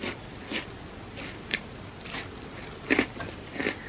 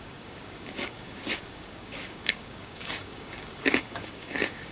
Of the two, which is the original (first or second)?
first